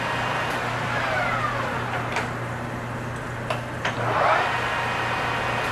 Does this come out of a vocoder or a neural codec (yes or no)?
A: no